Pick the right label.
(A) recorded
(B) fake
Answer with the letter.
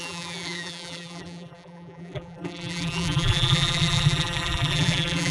B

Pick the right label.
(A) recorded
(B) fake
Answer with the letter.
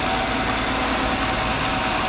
A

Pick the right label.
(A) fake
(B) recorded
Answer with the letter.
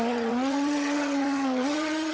A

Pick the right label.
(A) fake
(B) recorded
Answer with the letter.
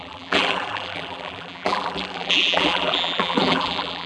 A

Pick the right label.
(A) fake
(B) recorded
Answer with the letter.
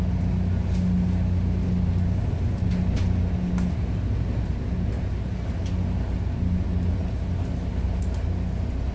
B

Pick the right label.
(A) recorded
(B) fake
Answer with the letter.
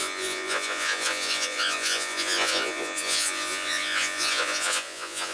B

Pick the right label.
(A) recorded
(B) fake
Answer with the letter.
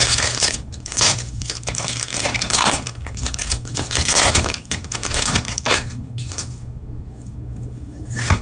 B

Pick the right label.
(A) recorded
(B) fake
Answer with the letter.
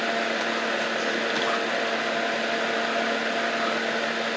A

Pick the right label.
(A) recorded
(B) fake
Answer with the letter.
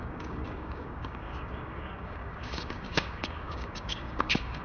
B